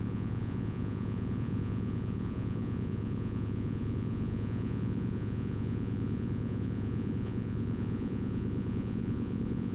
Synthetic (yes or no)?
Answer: yes